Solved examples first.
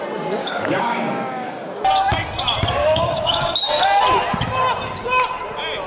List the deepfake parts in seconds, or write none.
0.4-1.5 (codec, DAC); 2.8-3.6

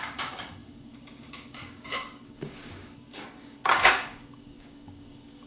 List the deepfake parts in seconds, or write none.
0.0-5.5 (codec, DAC)

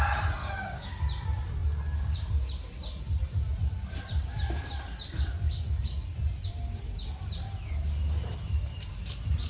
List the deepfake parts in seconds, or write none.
0.4-1.0 (codec, DAC)

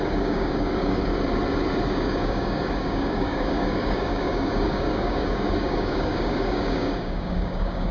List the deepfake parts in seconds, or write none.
0.0-1.1 (codec, DAC); 1.9-7.9

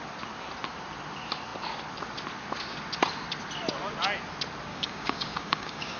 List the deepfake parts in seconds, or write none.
4.7-6.0 (codec, DAC)

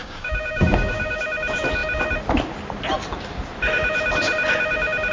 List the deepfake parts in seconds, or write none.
0.0-1.2 (codec, DAC)

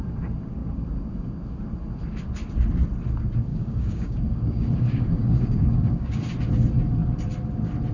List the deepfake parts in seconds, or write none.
3.5-6.2 (codec, DAC)